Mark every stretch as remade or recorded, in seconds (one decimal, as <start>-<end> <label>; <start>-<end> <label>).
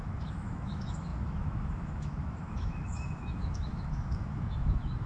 0.0-5.1 remade